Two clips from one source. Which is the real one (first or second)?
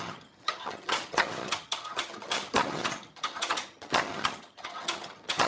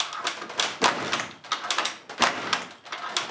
second